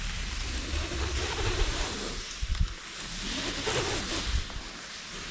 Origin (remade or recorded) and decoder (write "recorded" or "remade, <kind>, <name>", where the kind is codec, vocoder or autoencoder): recorded